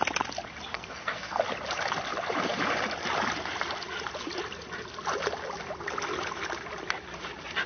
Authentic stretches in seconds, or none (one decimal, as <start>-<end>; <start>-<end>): 0.0-0.7; 1.4-7.7

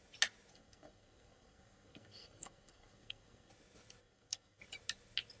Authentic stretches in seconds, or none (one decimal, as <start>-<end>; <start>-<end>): 0.0-0.5; 3.5-4.0; 4.6-5.4

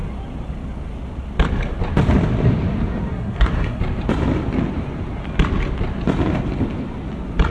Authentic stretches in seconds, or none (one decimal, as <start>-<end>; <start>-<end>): 0.0-3.1; 3.8-7.5